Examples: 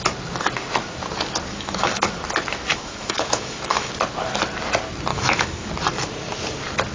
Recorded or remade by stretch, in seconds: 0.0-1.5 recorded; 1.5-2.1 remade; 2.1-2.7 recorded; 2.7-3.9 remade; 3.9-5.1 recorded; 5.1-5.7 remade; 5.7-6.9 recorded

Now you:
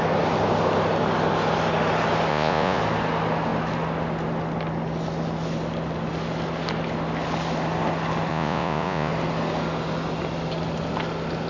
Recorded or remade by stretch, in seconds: 0.0-2.3 recorded; 2.3-2.8 remade; 2.8-8.3 recorded; 8.3-9.1 remade; 9.1-11.5 recorded

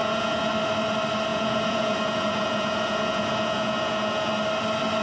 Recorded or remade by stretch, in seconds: 0.0-0.5 remade; 0.5-1.3 recorded; 1.3-4.3 remade; 4.3-5.0 recorded

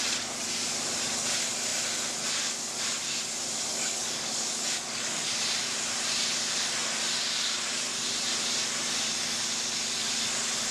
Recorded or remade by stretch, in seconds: 0.0-3.7 recorded; 3.7-5.3 remade; 5.3-10.7 recorded

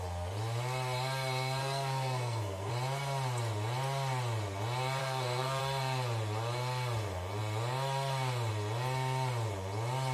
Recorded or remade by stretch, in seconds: 0.0-1.6 recorded; 1.6-2.7 remade; 2.7-5.0 recorded; 5.0-5.6 remade; 5.6-10.1 recorded

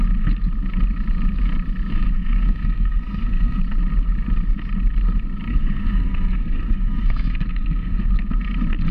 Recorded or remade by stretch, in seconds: 0.0-1.9 recorded; 1.9-3.6 remade; 3.6-5.5 recorded; 5.5-8.1 remade; 8.1-8.9 recorded

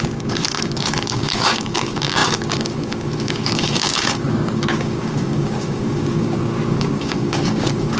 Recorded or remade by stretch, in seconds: 0.0-8.0 remade